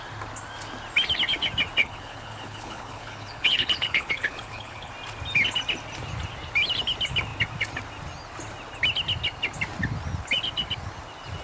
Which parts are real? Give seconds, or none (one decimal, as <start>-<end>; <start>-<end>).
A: 0.0-1.8; 4.9-11.4